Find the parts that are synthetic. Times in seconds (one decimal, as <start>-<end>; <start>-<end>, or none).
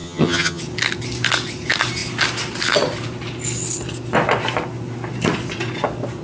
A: 0.0-0.6